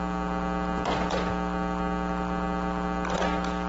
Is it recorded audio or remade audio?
recorded